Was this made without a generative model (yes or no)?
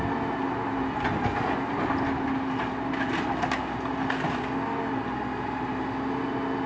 yes